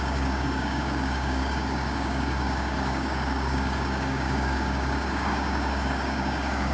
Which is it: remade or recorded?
remade